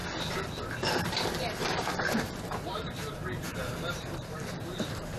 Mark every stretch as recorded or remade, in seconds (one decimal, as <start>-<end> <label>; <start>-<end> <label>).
0.0-0.9 recorded; 0.9-5.2 remade